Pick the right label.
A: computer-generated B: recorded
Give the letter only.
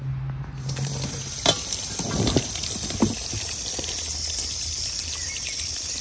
B